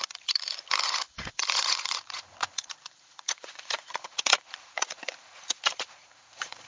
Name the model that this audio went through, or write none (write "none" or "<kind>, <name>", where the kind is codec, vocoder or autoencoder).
vocoder, Vocos